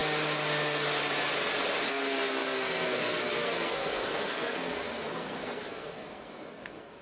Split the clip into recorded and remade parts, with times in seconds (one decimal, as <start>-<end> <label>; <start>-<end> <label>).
0.0-1.9 recorded; 1.9-7.0 remade